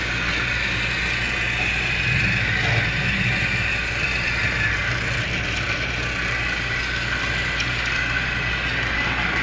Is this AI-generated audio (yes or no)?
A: no